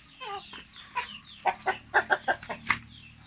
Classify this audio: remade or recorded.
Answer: recorded